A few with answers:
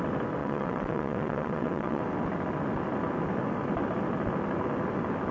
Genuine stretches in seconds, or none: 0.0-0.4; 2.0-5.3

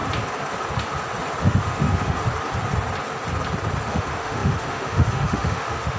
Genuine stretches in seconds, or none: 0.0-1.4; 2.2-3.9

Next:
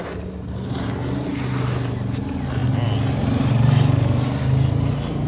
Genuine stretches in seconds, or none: 0.0-5.3